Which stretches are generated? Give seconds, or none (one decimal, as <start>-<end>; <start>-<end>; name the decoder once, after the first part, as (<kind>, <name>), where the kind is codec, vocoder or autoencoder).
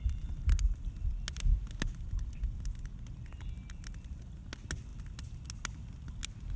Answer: none